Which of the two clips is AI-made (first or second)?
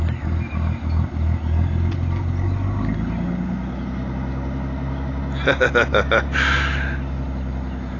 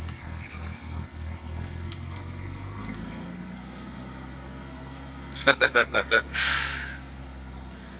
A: second